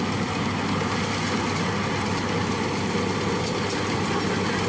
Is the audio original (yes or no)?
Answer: yes